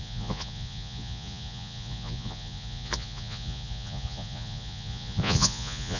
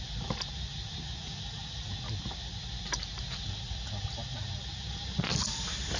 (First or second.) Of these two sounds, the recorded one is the second